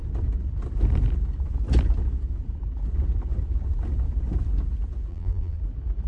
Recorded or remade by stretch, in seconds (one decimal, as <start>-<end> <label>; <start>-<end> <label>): 0.0-5.1 recorded; 5.1-5.6 remade; 5.6-6.1 recorded